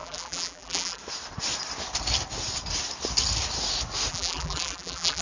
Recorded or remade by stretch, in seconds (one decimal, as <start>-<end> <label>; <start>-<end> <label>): 0.0-1.0 remade; 1.0-4.1 recorded; 4.1-5.2 remade